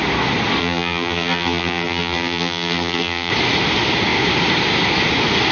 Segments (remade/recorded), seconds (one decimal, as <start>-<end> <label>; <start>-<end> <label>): 0.0-0.6 recorded; 0.6-3.3 remade; 3.3-5.5 recorded